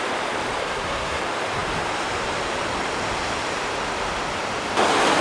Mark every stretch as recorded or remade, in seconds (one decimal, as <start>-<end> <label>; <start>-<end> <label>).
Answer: 0.0-0.6 recorded; 0.6-1.2 remade; 1.2-5.2 recorded